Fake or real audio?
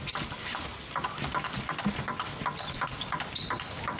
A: real